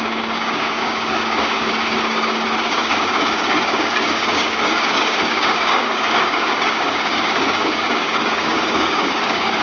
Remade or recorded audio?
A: remade